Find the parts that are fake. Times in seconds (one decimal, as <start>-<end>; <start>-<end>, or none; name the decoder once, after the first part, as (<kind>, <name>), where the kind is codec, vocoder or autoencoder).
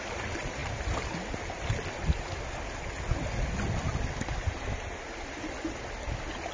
none